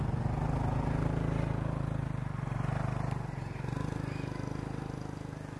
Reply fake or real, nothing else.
real